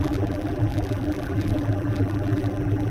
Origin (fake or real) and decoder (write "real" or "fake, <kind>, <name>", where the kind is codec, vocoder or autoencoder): fake, vocoder, BigVGAN v2